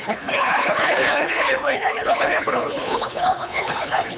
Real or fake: fake